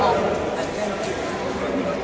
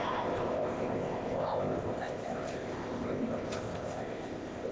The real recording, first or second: first